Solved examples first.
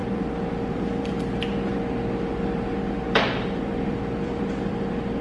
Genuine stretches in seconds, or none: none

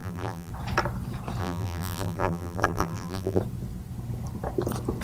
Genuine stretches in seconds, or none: 0.5-1.4; 3.4-5.0

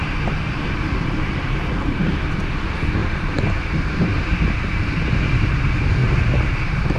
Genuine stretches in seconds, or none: 6.0-7.0

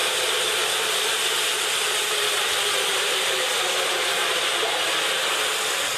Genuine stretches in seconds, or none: 0.0-2.9; 3.5-6.0

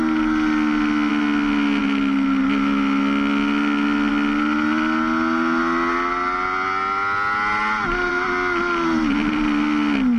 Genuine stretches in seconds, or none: 0.0-10.2

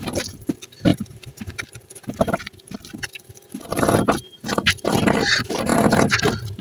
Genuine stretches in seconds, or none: 0.9-4.9; 5.7-6.6

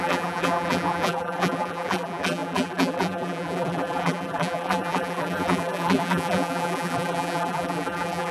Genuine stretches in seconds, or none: none